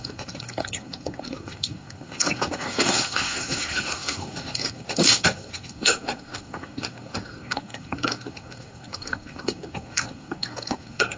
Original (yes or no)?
no